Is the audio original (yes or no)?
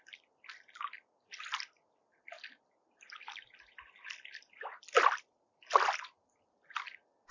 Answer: yes